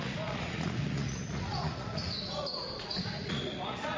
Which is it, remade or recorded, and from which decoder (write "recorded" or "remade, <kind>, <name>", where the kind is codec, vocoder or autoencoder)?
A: remade, vocoder, Vocos